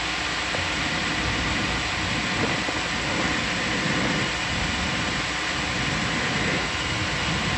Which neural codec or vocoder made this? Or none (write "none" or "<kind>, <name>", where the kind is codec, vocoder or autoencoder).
none